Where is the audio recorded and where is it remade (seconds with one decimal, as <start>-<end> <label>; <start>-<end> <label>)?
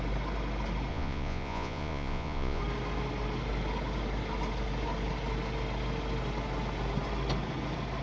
0.0-0.9 recorded; 0.9-2.6 remade; 2.6-8.0 recorded